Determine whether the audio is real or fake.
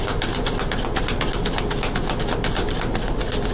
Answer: real